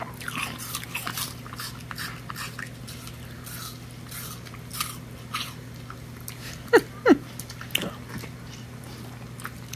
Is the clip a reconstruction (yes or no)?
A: no